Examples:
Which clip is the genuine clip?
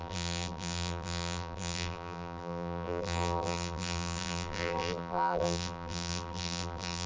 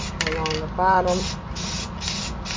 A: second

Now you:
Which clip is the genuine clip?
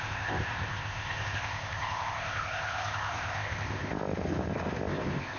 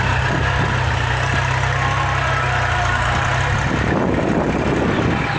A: second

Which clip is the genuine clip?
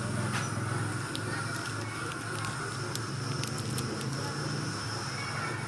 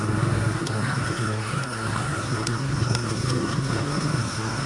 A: first